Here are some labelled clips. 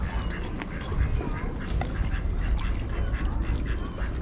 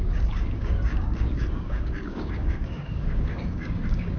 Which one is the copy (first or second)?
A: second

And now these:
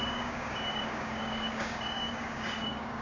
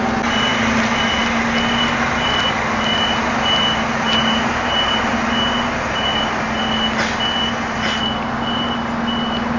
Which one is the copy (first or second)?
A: first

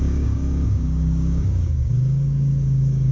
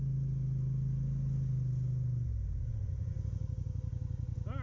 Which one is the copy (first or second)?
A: first